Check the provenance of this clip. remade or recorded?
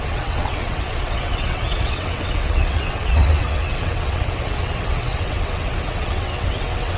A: remade